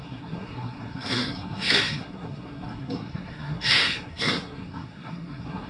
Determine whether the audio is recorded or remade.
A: remade